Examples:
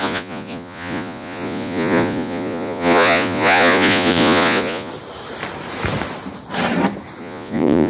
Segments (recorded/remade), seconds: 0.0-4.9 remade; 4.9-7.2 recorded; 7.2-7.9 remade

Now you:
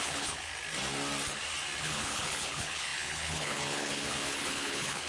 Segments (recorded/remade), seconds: 0.0-0.5 remade; 0.5-1.8 recorded; 1.8-5.1 remade